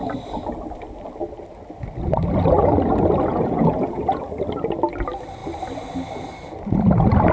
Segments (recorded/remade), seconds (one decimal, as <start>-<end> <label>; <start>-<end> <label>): 0.0-3.3 recorded; 3.3-4.2 remade; 4.2-7.3 recorded

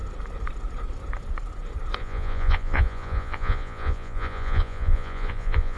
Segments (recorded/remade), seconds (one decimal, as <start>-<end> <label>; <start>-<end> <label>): 0.0-2.0 recorded; 2.0-5.8 remade